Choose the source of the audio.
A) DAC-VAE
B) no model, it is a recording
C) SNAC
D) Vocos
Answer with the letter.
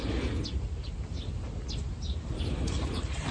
B